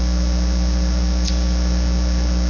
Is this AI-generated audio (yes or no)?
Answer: no